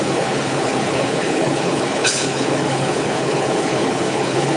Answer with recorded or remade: remade